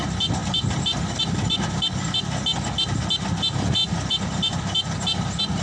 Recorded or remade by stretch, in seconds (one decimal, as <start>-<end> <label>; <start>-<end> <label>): 0.0-5.6 recorded